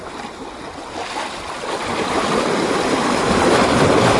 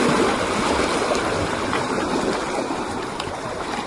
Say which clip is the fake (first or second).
first